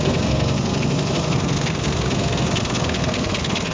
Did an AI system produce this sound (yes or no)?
yes